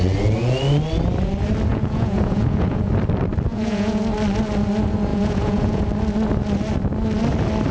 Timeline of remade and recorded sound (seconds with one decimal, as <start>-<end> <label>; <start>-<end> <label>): 0.0-1.7 recorded; 1.7-2.9 remade; 2.9-3.5 recorded; 3.5-4.0 remade; 4.0-5.1 recorded; 5.1-5.8 remade; 5.8-7.7 recorded